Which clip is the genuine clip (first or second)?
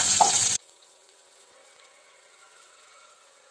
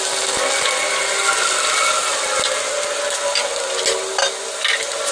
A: second